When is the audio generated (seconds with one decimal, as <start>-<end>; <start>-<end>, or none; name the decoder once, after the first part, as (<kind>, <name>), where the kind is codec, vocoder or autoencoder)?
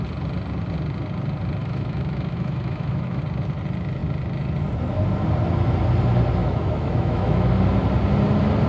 1.6-3.2 (autoencoder, DAC-VAE); 6.4-7.5